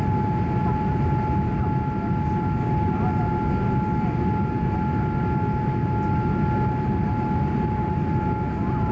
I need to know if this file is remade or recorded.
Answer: recorded